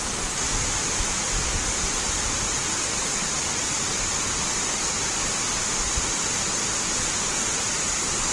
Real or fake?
real